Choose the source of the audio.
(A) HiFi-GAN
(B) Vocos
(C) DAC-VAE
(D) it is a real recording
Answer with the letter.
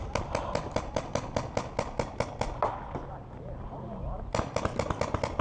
D